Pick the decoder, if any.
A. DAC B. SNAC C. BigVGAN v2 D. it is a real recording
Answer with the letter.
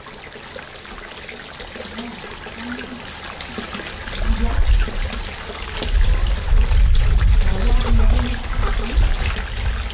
D